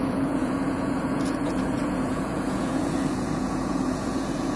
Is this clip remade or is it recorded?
remade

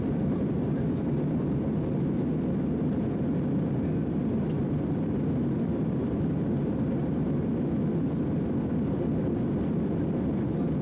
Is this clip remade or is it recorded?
recorded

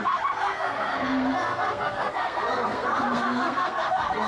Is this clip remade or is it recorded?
remade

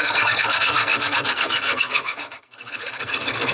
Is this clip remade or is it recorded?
remade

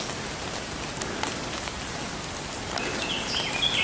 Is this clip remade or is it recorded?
recorded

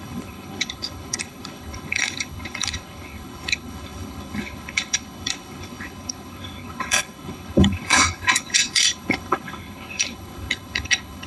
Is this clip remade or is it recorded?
remade